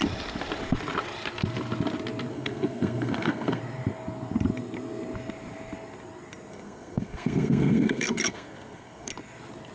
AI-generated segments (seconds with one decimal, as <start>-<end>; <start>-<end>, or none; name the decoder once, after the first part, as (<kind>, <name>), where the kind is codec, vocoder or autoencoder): 2.3-3.6 (codec, SNAC); 6.5-9.1